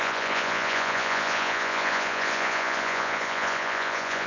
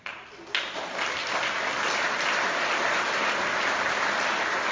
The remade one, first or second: first